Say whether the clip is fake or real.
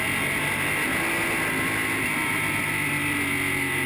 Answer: real